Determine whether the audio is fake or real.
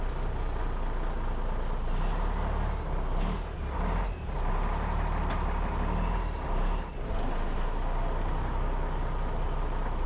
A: real